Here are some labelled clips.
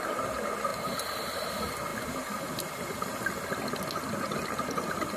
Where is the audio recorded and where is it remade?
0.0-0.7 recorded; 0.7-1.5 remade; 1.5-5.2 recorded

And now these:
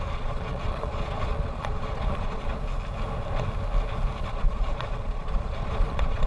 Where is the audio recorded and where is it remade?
0.0-2.5 remade; 2.5-4.3 recorded; 4.3-6.3 remade

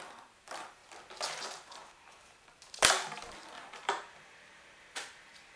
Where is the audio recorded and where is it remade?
0.0-0.8 remade; 0.8-1.4 recorded; 1.4-1.8 remade; 1.8-3.3 recorded; 3.3-5.6 remade

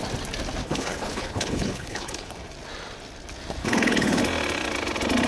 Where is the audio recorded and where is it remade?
0.0-0.6 recorded; 0.6-2.3 remade; 2.3-3.6 recorded; 3.6-4.2 remade; 4.2-5.3 recorded

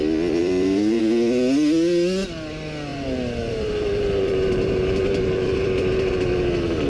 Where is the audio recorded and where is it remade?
0.0-0.4 recorded; 0.4-1.0 remade; 1.0-2.9 recorded; 2.9-6.1 remade; 6.1-6.9 recorded